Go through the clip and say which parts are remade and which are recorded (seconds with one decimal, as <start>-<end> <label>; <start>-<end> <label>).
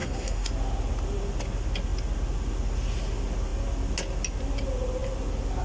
0.0-0.5 remade; 0.5-5.6 recorded